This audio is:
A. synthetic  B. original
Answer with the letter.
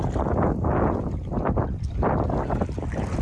B